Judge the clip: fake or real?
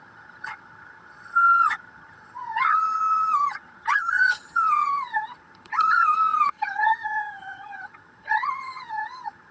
fake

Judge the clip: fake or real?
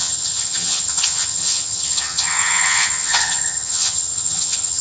fake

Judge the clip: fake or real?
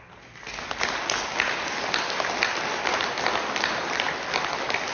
real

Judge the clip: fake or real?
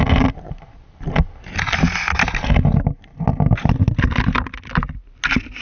real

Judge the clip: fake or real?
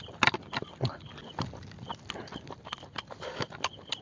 real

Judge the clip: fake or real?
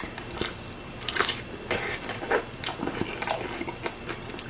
real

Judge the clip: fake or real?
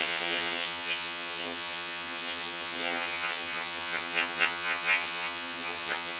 fake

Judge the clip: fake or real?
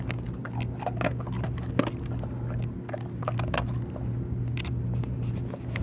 real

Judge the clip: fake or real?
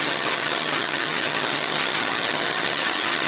fake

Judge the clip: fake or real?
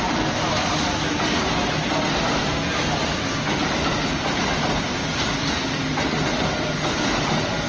real